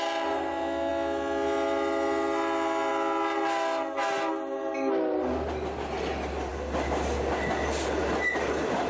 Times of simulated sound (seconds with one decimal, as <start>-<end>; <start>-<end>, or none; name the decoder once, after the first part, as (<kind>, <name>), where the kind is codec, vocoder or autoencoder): none